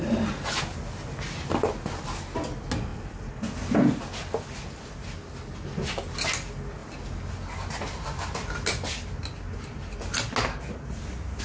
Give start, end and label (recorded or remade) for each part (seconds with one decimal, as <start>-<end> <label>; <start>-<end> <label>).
0.0-11.4 recorded